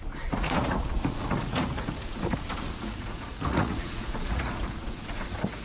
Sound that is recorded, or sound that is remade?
remade